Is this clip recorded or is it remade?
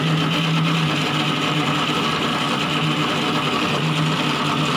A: recorded